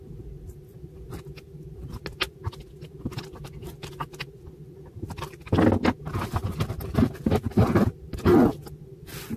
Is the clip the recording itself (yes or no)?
yes